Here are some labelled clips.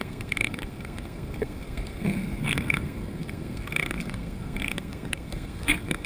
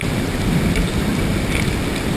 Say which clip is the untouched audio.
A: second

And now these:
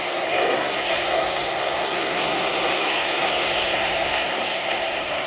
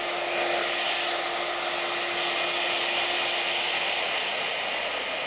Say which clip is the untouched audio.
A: second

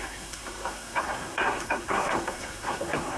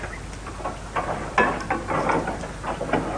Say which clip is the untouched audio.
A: second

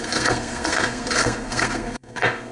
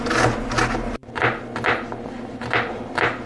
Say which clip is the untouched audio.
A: second